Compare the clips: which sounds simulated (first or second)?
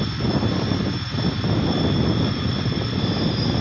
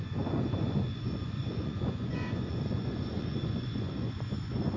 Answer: second